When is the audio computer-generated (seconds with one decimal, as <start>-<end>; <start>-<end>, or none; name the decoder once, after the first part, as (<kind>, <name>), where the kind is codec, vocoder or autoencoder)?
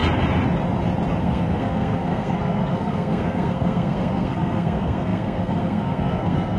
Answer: 1.2-6.6 (codec, SNAC)